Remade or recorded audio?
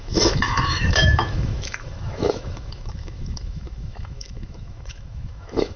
remade